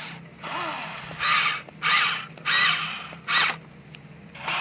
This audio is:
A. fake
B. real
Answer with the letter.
B